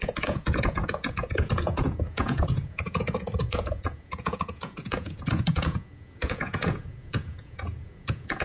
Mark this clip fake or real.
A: fake